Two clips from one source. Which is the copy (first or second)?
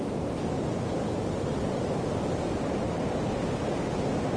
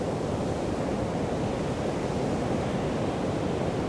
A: second